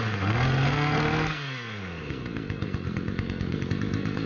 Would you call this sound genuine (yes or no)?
no